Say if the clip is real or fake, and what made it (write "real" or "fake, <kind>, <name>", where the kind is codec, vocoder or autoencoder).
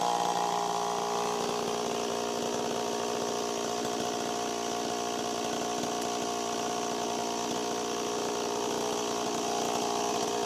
real